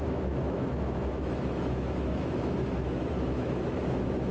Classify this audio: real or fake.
fake